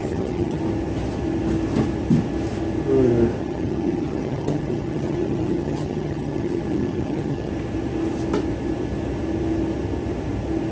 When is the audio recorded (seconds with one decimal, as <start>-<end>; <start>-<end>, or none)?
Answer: 0.6-3.4; 7.5-10.7